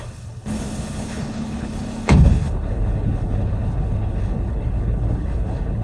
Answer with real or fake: fake